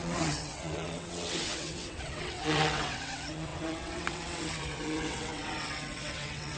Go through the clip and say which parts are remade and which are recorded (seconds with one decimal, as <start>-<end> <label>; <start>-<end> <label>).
0.0-6.6 remade